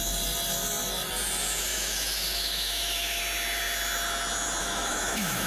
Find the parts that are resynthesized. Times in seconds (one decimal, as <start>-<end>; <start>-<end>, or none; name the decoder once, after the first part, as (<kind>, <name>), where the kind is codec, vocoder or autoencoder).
1.7-3.2 (autoencoder, DAC-VAE); 4.6-5.5